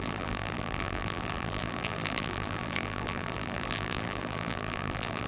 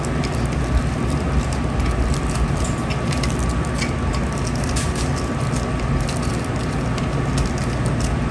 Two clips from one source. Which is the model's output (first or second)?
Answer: first